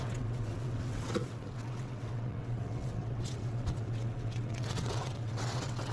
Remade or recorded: remade